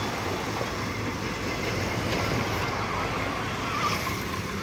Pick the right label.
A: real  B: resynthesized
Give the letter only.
A